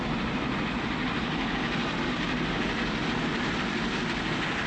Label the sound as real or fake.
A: real